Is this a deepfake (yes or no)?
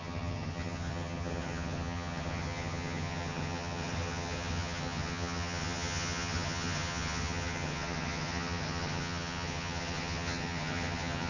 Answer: yes